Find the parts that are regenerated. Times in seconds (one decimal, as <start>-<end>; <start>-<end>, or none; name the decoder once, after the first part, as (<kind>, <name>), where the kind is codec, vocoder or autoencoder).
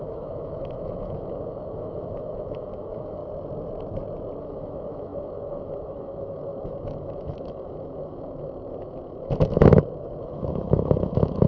0.0-3.2 (autoencoder, DAC-VAE); 4.4-11.5